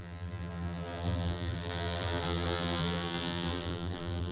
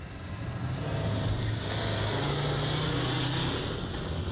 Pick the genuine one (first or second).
second